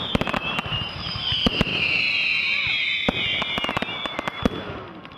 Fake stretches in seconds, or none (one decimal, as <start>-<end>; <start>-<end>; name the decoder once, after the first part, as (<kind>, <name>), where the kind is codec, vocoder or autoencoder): 0.0-1.7 (vocoder, BigVGAN v2); 4.8-5.2